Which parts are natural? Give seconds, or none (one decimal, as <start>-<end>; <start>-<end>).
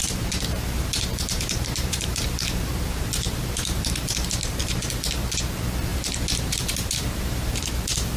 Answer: 4.9-5.9; 7.7-8.2